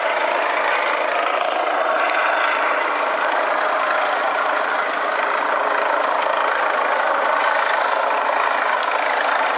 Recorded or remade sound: recorded